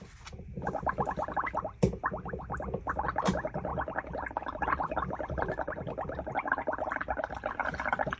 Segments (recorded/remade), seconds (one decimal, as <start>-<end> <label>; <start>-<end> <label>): 0.0-3.7 recorded; 3.7-7.5 remade; 7.5-8.2 recorded